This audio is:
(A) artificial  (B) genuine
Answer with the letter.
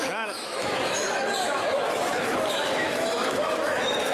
A